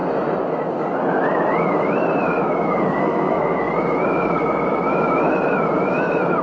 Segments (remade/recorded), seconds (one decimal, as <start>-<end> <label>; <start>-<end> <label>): 0.0-3.0 recorded; 3.0-3.6 remade; 3.6-6.4 recorded